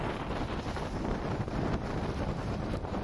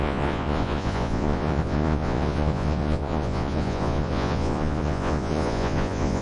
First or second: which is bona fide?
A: first